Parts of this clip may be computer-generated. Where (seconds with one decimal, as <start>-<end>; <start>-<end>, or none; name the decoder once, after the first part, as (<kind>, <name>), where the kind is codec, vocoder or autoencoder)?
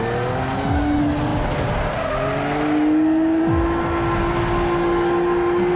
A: none